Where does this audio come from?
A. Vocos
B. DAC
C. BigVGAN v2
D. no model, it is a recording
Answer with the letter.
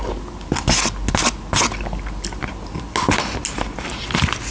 D